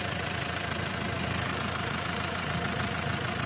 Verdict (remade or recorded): remade